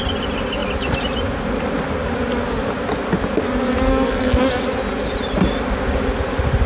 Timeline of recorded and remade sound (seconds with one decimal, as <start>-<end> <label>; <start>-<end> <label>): 0.0-3.9 recorded; 3.9-4.4 remade; 4.4-6.7 recorded